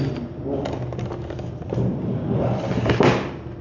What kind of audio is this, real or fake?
real